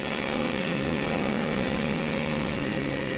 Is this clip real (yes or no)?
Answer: no